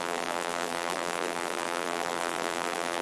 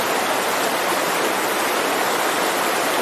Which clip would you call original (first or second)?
second